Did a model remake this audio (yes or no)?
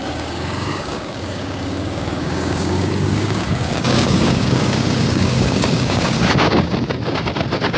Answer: yes